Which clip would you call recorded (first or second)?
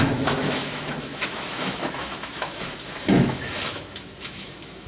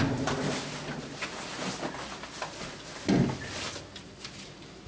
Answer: second